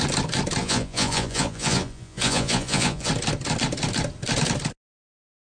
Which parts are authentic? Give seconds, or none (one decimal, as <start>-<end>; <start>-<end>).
0.0-0.6; 3.1-5.5